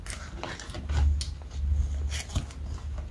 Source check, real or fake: real